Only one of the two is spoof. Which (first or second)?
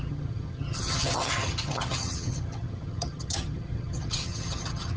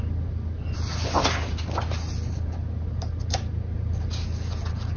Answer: first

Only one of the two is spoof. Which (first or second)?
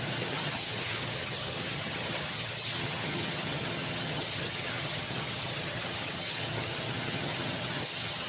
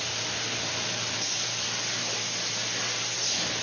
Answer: first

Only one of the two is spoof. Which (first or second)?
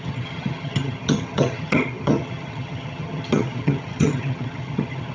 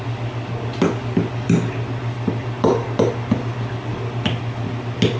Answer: first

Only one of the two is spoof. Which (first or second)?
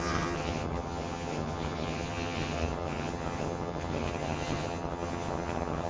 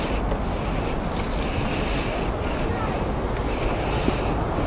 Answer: first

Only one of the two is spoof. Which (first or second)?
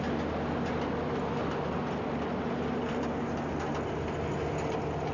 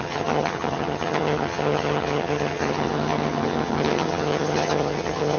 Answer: second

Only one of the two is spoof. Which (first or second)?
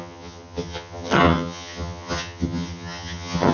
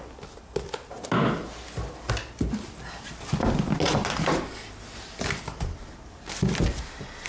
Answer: first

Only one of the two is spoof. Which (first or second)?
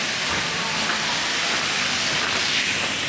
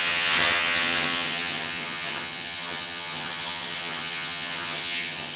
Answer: second